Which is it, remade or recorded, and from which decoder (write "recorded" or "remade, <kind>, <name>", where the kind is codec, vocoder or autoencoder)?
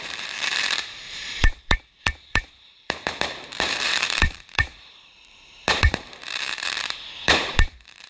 remade, vocoder, BigVGAN v2